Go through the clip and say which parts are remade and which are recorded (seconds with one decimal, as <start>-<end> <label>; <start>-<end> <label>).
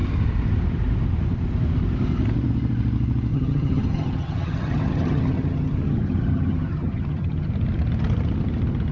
0.0-3.3 recorded; 3.3-7.5 remade; 7.5-8.9 recorded